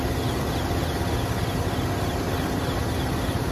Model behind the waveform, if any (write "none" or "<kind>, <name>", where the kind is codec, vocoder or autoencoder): none